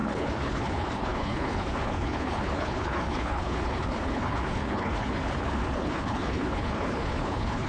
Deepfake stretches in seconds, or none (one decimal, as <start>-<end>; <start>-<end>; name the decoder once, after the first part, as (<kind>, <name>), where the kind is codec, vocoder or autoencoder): 0.0-7.7 (codec, HILCodec)